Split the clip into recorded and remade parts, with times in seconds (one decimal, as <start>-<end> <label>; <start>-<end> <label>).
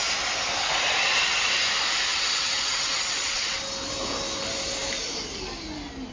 0.0-2.1 recorded; 2.1-3.6 remade; 3.6-6.1 recorded